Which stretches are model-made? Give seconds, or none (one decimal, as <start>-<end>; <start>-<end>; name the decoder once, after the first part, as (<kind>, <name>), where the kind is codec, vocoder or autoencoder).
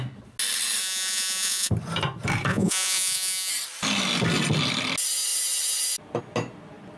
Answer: 0.8-1.7 (vocoder, Vocos); 2.5-3.5